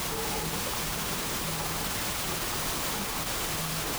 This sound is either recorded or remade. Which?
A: recorded